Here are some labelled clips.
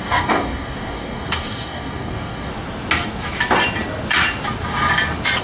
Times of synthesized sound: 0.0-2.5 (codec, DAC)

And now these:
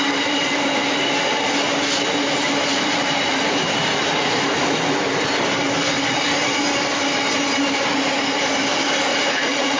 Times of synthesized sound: 9.1-9.8 (vocoder, Vocos)